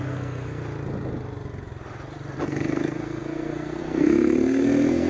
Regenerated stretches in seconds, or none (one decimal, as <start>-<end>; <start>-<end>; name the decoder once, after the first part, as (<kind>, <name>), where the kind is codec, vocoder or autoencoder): 0.0-0.6 (codec, SNAC); 2.4-5.1